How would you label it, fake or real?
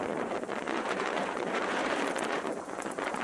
fake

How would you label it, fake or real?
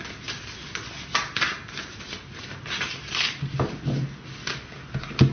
real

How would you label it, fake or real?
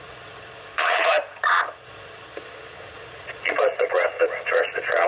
fake